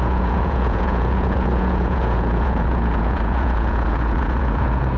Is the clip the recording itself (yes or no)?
no